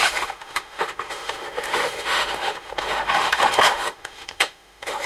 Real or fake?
fake